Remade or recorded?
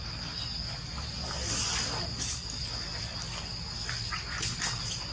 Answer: recorded